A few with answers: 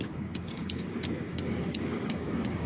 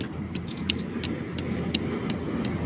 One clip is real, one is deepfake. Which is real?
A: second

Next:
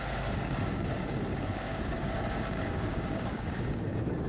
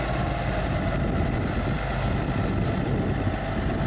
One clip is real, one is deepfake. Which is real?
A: second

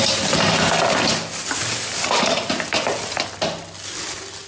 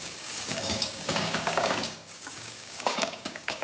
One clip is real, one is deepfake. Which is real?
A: first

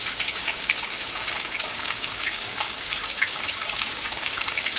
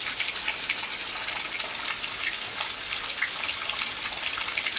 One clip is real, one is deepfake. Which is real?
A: second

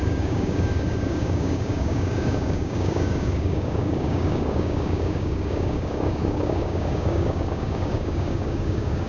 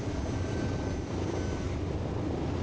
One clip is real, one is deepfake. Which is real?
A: second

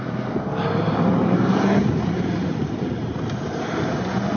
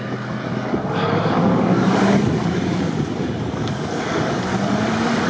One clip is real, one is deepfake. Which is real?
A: first